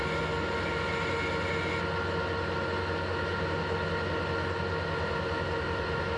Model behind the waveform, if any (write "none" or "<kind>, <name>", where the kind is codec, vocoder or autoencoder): none